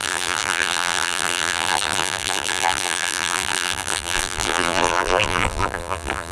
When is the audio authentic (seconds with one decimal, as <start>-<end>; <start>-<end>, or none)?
none